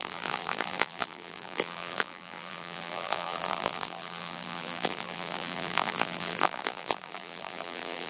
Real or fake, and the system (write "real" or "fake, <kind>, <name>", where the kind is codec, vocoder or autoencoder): fake, vocoder, BigVGAN v2